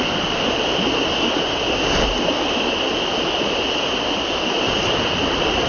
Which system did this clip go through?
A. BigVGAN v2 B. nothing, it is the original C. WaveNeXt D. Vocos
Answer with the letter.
B